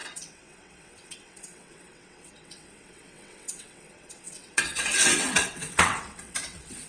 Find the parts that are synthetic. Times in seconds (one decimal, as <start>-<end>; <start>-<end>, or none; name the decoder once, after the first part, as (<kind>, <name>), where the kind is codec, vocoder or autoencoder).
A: 0.0-6.9 (vocoder, WaveNeXt)